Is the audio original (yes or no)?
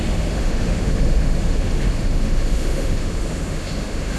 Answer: no